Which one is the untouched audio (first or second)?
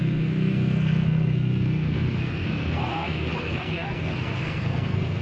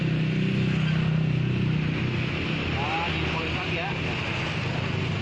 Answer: second